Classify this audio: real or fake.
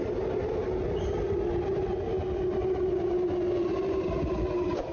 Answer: real